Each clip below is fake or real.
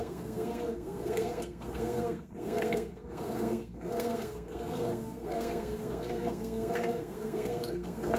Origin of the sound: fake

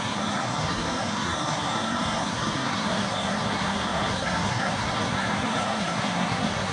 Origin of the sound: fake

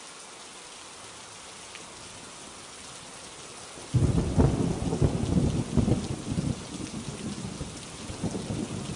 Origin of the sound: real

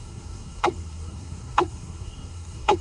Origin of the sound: fake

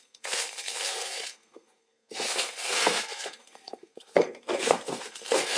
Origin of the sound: fake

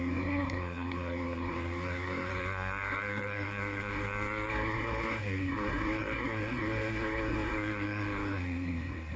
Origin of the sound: fake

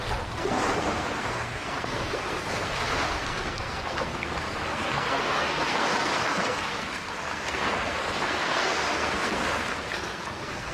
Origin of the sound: fake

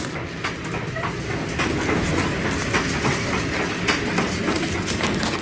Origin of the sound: real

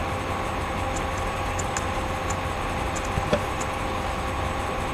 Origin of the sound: real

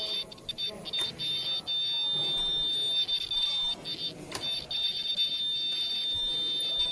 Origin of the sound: real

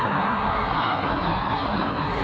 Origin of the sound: fake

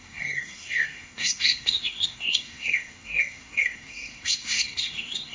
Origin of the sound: fake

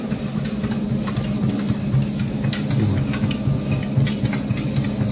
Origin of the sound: real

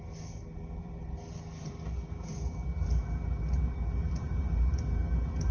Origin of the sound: real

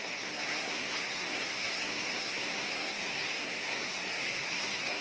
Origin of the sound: fake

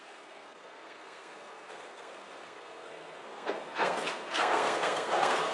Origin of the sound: fake